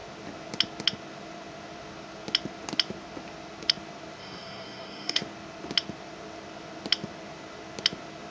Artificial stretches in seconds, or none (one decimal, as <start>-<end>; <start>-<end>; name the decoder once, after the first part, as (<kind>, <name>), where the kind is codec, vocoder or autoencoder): 4.2-5.2 (codec, SNAC)